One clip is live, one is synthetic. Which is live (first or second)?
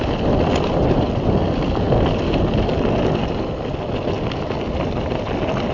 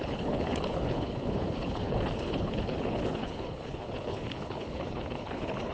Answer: first